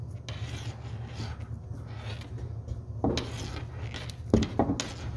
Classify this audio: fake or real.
real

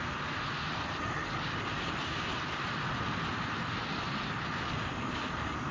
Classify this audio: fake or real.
real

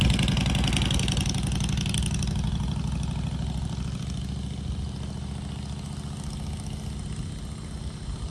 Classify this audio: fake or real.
real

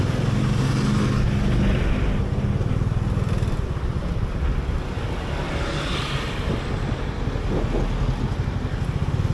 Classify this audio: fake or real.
real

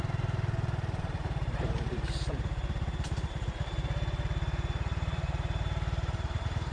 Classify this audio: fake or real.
fake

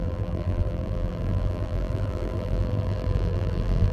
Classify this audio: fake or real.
fake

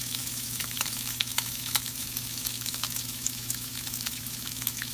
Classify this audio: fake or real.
fake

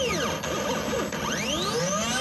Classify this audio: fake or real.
real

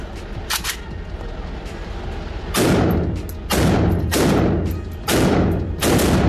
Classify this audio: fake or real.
real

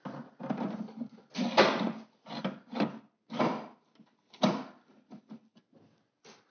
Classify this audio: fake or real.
real